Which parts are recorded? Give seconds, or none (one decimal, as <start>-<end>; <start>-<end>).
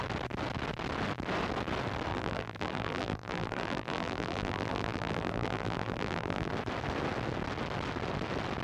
0.0-2.1; 6.5-8.6